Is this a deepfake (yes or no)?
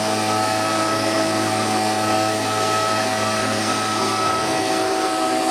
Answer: yes